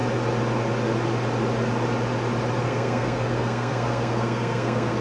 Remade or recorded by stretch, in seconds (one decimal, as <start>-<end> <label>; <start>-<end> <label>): 0.0-2.6 recorded; 2.6-5.0 remade